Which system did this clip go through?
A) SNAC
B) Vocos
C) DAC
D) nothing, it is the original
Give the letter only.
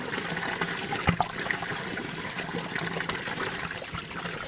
D